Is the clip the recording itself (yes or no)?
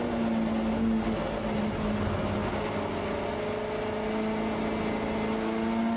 yes